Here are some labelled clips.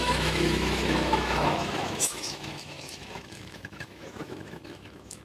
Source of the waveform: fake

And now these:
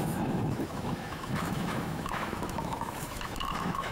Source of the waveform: fake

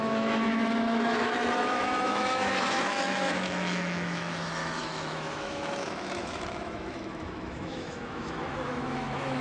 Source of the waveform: fake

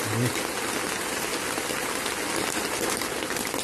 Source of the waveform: real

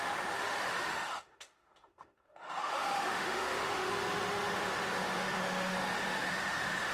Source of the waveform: fake